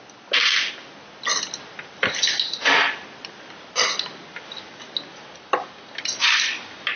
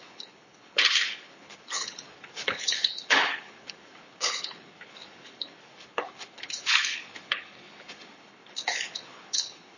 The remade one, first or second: second